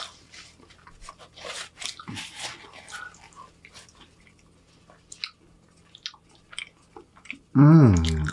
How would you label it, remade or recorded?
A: recorded